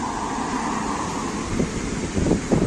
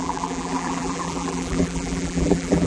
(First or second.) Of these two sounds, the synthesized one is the second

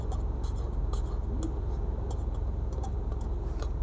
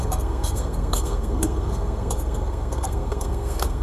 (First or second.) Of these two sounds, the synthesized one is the second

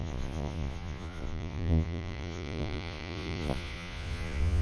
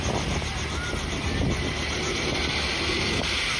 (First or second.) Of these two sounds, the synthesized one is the first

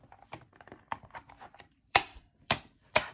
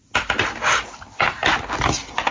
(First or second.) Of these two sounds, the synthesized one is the first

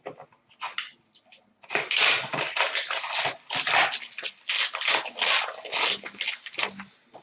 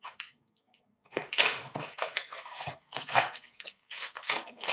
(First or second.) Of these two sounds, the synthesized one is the second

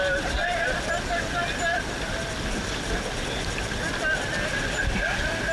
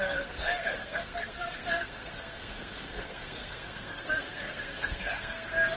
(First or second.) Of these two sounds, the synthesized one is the second